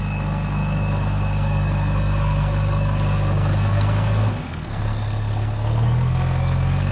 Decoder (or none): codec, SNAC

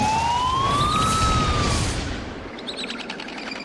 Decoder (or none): none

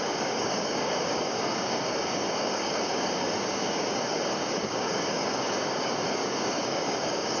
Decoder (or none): codec, DAC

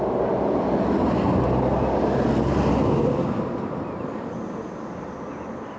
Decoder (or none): none